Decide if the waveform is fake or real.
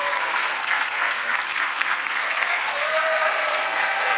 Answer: fake